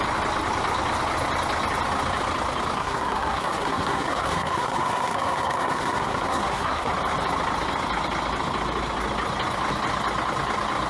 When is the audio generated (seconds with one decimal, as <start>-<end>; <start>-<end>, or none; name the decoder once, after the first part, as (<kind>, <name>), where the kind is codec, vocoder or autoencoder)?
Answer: 2.8-6.9 (codec, SNAC)